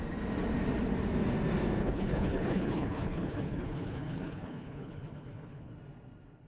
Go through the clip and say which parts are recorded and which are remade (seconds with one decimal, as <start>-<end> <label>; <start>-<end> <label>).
0.0-1.8 recorded; 1.8-5.7 remade; 5.7-6.5 recorded